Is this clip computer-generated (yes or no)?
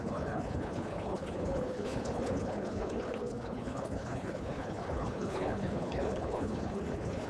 yes